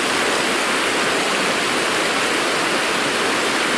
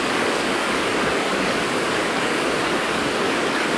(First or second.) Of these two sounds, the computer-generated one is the second